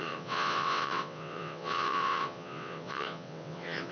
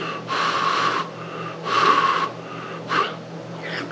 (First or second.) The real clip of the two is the second